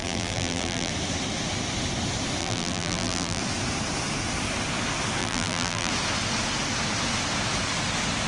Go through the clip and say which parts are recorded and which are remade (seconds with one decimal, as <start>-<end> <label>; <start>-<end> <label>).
0.0-0.9 remade; 0.9-2.4 recorded; 2.4-3.4 remade; 3.4-5.2 recorded; 5.2-5.9 remade; 5.9-8.3 recorded